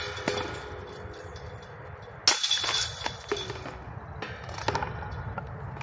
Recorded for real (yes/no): yes